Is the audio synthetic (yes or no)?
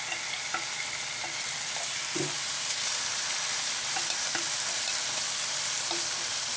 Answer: yes